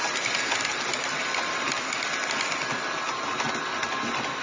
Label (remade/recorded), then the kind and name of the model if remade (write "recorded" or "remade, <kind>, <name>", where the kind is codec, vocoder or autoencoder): recorded